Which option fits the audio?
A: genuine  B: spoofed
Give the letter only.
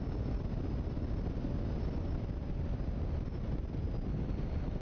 A